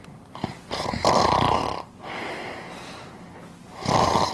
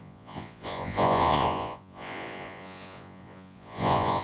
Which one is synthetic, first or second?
second